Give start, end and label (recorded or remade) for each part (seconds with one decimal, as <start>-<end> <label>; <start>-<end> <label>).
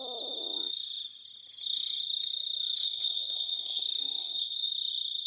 0.0-2.8 recorded; 2.8-3.8 remade; 3.8-4.2 recorded; 4.2-4.7 remade; 4.7-5.3 recorded